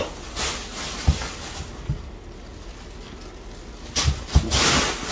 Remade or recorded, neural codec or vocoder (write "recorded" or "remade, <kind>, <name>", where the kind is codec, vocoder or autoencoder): recorded